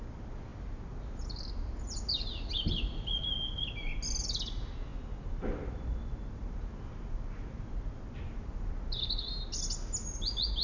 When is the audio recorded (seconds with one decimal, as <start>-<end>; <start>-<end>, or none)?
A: 0.0-10.6